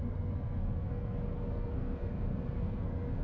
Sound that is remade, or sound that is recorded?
remade